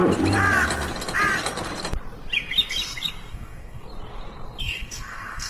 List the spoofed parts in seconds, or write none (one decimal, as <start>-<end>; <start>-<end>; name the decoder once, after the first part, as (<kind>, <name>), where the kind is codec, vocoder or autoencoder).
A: 3.3-3.8 (codec, SNAC); 4.6-5.5